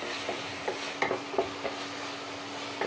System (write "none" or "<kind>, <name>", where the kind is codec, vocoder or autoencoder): none